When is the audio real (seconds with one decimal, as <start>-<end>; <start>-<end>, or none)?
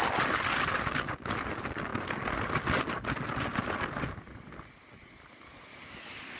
0.0-6.4